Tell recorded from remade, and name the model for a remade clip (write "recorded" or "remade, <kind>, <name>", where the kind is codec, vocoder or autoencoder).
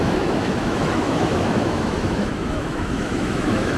remade, autoencoder, DAC-VAE